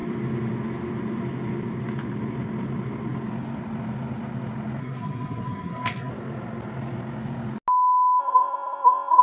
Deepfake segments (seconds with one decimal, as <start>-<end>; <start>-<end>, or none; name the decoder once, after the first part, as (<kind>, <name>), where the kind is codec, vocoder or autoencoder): 4.8-6.1 (codec, SNAC); 8.2-9.2